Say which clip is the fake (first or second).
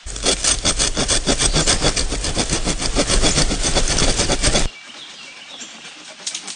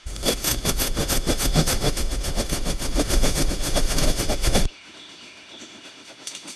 second